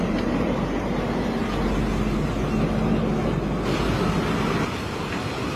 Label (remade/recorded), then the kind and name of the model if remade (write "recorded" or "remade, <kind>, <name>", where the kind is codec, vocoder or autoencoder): recorded